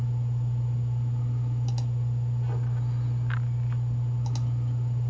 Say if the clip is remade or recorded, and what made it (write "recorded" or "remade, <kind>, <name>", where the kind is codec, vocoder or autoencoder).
recorded